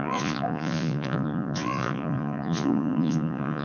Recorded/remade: remade